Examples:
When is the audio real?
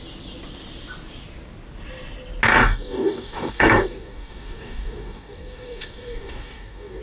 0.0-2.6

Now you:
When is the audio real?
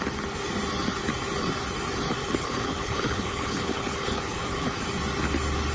0.0-2.2; 4.8-5.7